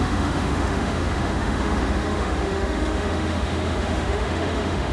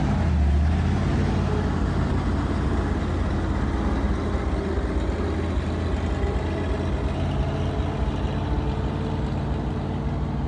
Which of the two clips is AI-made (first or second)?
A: first